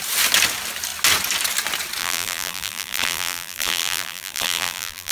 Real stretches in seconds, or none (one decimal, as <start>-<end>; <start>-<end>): 0.0-2.0